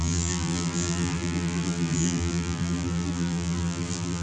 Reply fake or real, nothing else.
fake